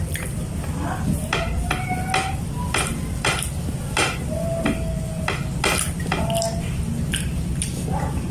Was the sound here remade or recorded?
recorded